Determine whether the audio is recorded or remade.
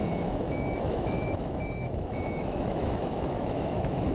remade